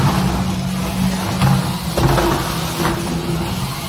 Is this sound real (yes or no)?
yes